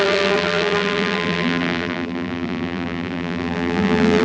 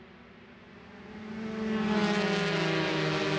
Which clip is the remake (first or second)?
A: first